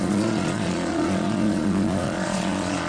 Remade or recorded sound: remade